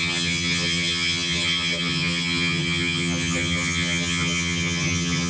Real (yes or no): no